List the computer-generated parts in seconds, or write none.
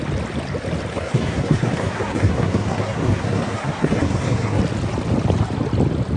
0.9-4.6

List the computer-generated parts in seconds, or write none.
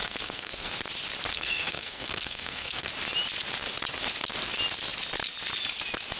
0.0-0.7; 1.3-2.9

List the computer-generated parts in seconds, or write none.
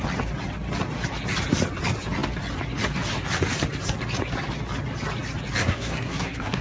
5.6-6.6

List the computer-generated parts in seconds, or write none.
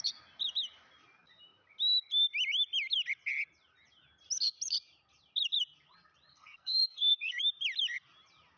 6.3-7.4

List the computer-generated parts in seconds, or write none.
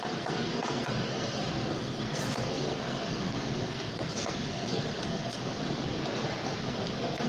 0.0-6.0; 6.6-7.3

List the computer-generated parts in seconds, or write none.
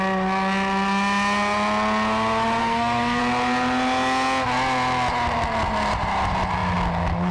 2.6-3.2